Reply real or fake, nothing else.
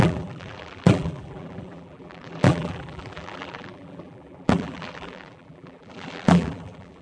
fake